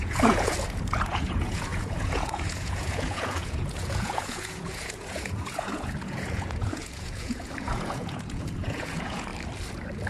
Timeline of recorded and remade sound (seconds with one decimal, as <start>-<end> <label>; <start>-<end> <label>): 0.0-9.3 remade; 9.3-10.1 recorded